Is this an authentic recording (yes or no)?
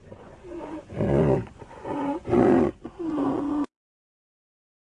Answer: no